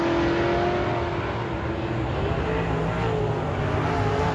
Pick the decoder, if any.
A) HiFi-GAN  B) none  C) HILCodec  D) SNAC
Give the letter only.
B